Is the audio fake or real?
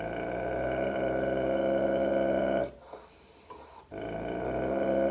real